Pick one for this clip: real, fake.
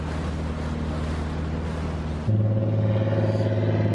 real